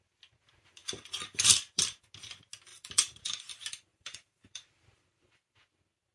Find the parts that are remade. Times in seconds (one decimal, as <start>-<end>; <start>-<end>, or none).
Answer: 0.8-2.0; 2.7-3.5; 3.9-5.2